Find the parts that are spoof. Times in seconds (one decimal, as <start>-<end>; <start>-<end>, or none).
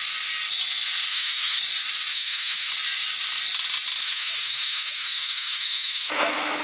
1.1-1.6; 2.1-2.7; 4.0-6.6